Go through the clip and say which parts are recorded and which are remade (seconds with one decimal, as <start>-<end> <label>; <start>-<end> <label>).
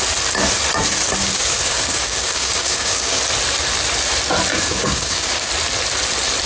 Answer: 0.0-1.2 recorded; 1.2-3.2 remade; 3.2-4.5 recorded; 4.5-5.5 remade; 5.5-6.5 recorded